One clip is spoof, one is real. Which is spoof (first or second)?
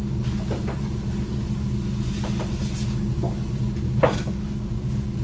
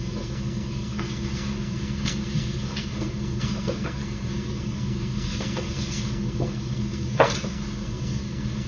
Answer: second